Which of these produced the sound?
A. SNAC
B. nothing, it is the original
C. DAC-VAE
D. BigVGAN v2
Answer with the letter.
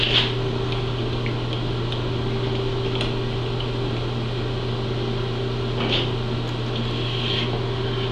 B